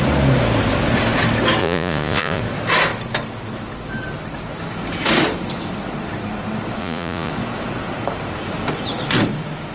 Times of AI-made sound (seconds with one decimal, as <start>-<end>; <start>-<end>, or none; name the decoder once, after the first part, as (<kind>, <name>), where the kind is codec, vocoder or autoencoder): 1.6-2.4 (vocoder, Vocos); 6.8-7.3